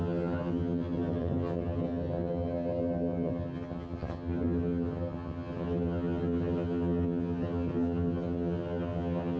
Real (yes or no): no